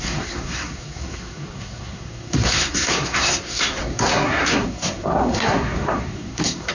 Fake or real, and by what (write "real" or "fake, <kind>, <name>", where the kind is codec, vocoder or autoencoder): fake, codec, SNAC